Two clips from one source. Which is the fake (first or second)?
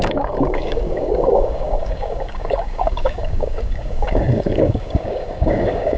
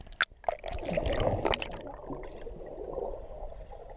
first